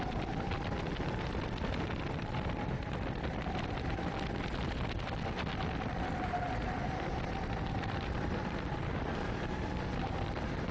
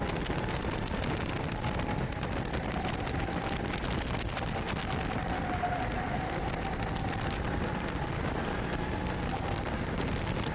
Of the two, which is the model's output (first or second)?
first